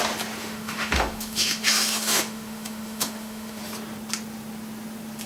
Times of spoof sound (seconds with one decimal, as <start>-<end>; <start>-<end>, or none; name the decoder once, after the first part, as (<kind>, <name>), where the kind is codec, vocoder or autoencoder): 0.4-3.6 (autoencoder, DAC-VAE)